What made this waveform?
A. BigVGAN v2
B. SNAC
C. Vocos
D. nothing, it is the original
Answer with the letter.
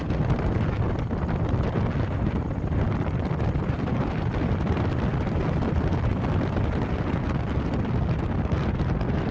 A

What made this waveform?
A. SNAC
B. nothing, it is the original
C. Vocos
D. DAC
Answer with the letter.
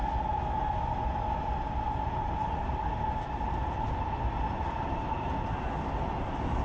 B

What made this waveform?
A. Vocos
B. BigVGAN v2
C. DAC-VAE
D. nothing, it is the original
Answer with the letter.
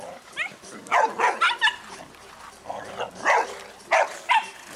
D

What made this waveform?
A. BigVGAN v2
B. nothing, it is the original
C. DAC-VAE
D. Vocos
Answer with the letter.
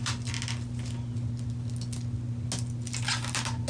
B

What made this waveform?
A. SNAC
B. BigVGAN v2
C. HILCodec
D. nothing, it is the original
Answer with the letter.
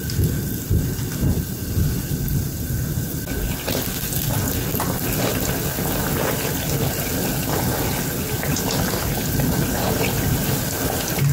D